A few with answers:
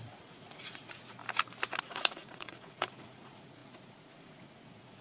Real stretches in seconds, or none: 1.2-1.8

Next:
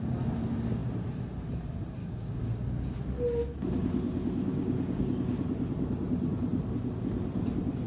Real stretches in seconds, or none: 0.0-2.0; 2.6-4.5; 5.0-7.9

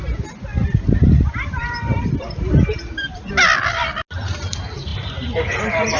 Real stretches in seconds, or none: 0.0-0.5; 3.3-4.9

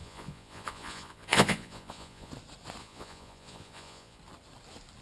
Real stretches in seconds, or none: 2.3-2.8; 4.2-5.0

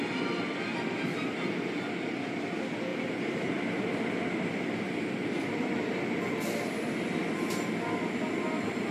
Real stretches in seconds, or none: 0.0-2.9; 4.1-8.9